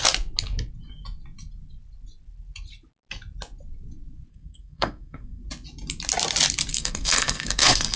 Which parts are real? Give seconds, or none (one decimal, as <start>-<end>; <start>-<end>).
0.0-4.3; 5.4-6.7